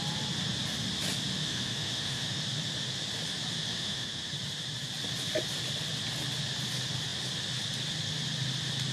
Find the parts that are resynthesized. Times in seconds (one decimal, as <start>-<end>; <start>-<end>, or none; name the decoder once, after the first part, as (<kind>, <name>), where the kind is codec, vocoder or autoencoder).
1.4-2.4 (autoencoder, DAC-VAE); 3.7-4.3